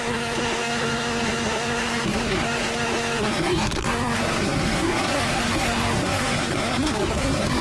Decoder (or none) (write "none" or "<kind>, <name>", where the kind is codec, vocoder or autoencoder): codec, SNAC